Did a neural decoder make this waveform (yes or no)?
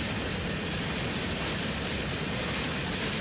no